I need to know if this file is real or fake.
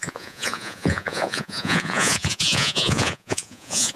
fake